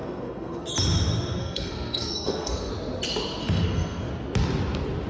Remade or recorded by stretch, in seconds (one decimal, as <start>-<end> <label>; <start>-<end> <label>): 0.0-0.7 remade; 0.7-1.4 recorded; 1.4-2.7 remade; 2.7-3.4 recorded; 3.4-4.1 remade; 4.1-5.1 recorded